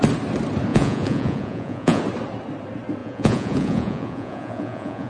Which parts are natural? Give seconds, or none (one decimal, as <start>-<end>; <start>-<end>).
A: 0.0-0.7; 2.0-3.0